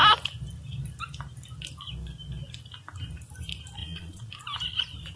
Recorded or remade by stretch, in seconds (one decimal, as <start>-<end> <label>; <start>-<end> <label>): 0.0-3.8 recorded; 3.8-4.3 remade; 4.3-5.2 recorded